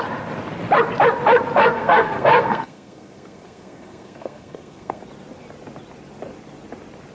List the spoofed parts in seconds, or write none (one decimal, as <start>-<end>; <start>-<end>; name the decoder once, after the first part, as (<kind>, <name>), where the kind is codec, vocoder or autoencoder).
1.6-5.0 (codec, SNAC)